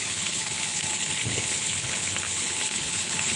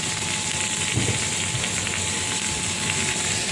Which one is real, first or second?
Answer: second